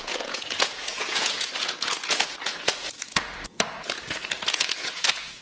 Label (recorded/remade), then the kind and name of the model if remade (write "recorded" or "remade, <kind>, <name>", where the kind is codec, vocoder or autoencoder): remade, vocoder, Vocos